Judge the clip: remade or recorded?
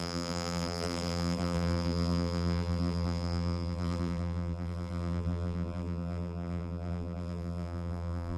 remade